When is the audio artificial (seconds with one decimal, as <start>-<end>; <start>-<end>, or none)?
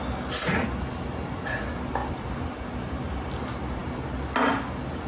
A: 2.0-3.3